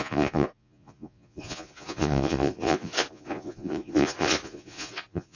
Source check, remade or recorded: remade